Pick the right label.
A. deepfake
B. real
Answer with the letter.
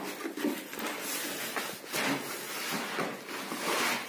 B